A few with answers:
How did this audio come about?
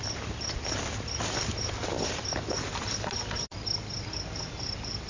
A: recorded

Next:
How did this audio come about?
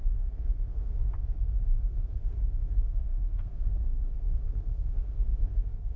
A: remade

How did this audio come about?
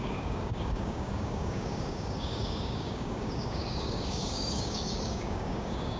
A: remade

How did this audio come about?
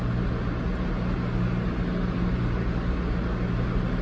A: recorded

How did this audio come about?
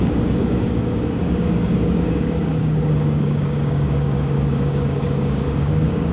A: remade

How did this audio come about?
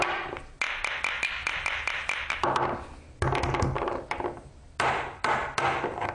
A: recorded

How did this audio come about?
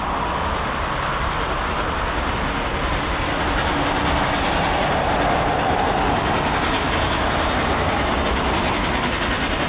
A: recorded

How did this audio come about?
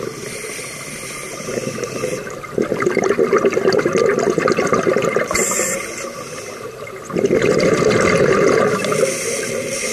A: recorded